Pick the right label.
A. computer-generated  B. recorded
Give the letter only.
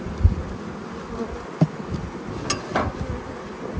B